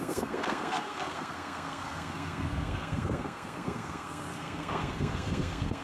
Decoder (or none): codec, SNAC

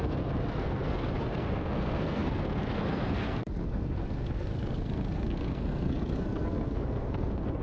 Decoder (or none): codec, SNAC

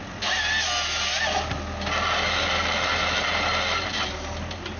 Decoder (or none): none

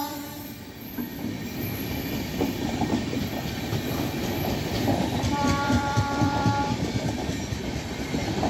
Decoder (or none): vocoder, BigVGAN v2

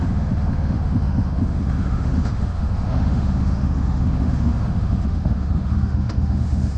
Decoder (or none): autoencoder, DAC-VAE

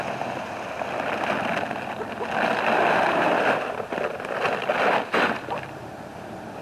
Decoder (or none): vocoder, BigVGAN v2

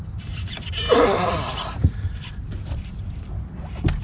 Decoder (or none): vocoder, BigVGAN v2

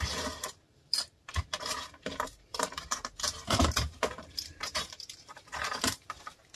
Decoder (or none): vocoder, BigVGAN v2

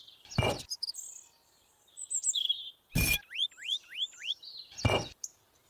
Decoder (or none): none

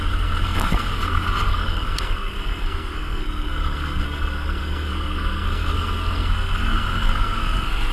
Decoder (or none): codec, SNAC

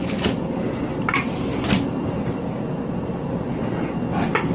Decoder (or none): none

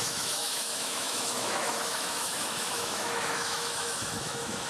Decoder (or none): autoencoder, DAC-VAE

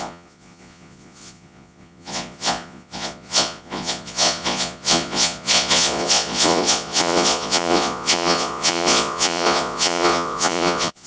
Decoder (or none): vocoder, Vocos